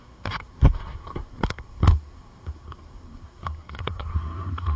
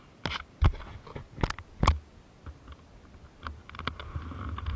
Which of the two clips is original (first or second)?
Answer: second